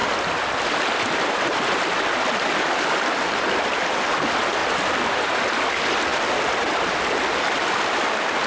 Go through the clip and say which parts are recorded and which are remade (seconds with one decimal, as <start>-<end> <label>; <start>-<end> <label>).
0.0-8.5 recorded